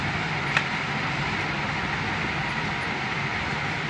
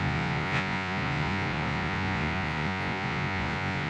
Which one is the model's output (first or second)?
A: second